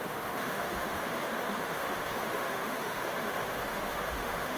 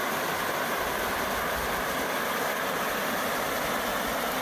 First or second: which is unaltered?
second